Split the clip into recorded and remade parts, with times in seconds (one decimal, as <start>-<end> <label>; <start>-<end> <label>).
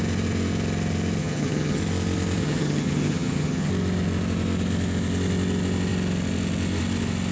0.0-1.2 recorded; 1.2-1.8 remade; 1.8-2.4 recorded; 2.4-3.7 remade; 3.7-7.3 recorded